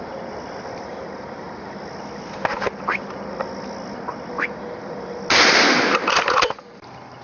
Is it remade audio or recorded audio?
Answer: recorded